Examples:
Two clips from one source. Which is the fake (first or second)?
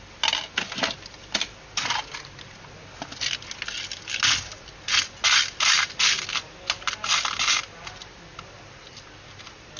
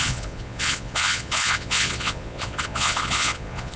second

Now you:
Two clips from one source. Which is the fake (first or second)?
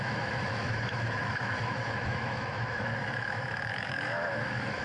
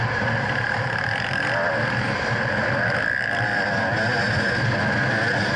first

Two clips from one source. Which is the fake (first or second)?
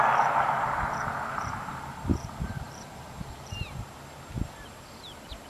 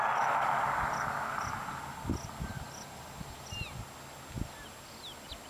first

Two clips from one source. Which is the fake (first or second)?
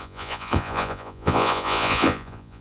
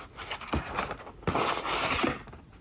first